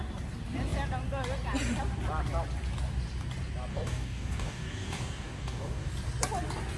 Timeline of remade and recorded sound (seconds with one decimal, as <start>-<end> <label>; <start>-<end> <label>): 0.0-3.7 recorded; 3.7-5.9 remade; 5.9-6.8 recorded